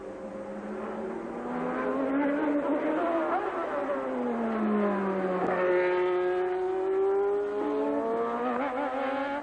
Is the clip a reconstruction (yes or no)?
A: no